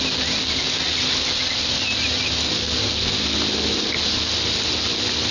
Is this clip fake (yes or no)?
no